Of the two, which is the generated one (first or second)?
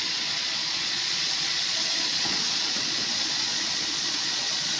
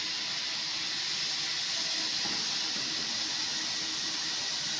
first